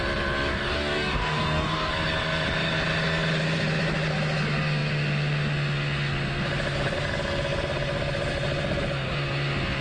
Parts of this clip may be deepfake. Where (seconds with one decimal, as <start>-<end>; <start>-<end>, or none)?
0.5-1.9